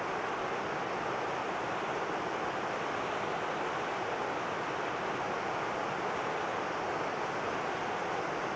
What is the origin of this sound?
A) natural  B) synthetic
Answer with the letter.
A